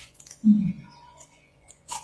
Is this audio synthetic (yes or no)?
yes